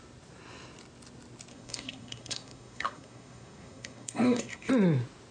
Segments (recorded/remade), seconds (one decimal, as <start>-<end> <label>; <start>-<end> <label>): 0.0-1.5 recorded; 1.5-4.7 remade; 4.7-5.3 recorded